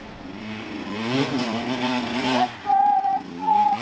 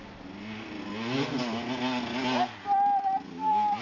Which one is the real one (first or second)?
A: second